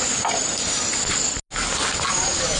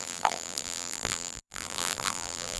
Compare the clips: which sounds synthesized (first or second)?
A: second